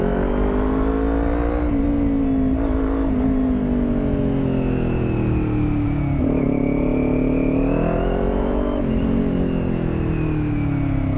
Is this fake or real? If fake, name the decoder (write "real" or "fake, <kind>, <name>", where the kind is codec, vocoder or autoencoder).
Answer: real